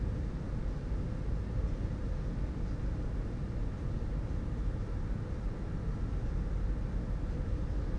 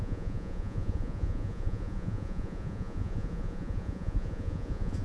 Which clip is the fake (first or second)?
second